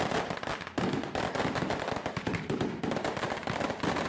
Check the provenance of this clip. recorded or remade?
recorded